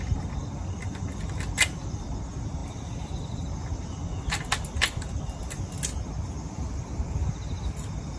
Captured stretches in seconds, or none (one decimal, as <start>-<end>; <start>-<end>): 0.0-8.2